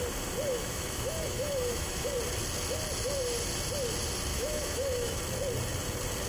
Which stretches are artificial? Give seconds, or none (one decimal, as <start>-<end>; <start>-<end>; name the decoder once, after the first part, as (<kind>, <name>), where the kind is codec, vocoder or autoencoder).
0.5-2.1 (autoencoder, DAC-VAE); 4.3-5.2